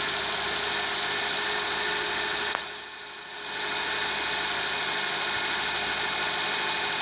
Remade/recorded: recorded